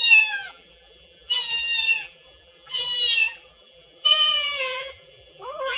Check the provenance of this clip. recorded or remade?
remade